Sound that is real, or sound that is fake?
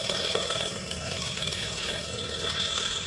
fake